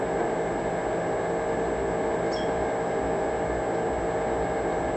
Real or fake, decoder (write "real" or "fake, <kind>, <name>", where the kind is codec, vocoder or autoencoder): real